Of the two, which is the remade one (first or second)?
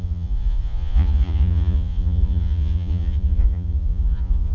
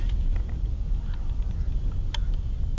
first